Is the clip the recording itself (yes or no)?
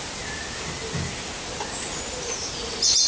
yes